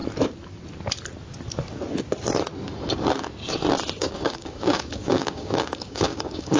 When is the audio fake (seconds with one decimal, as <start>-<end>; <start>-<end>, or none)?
4.0-6.6